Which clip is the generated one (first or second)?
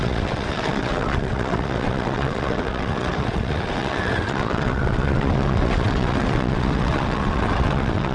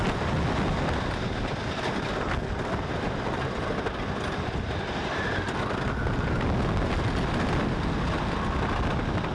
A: first